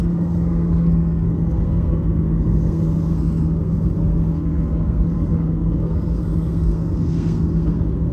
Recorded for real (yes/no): no